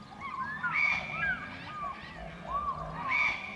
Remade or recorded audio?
recorded